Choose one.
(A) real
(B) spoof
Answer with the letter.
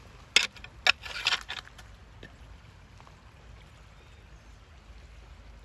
A